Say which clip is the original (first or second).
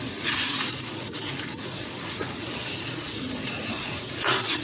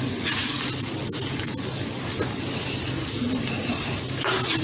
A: second